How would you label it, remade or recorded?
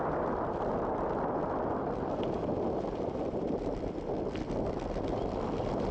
recorded